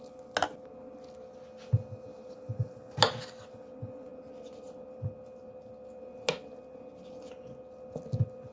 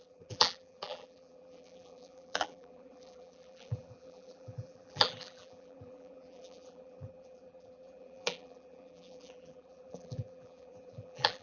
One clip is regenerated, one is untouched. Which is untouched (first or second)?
first